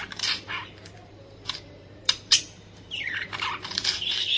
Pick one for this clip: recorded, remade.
remade